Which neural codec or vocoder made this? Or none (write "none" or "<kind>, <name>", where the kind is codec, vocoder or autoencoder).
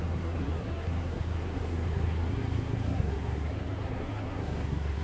codec, SNAC